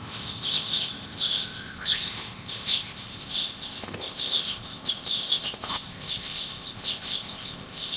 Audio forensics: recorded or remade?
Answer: remade